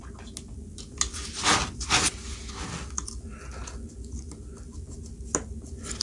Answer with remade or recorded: recorded